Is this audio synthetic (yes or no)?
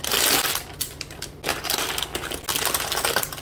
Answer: no